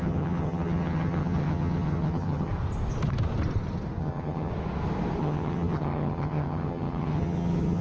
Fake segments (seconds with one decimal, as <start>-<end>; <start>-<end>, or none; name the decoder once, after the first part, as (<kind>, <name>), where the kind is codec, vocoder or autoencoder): 0.0-2.5 (vocoder, HiFi-GAN); 4.0-4.5; 5.2-7.8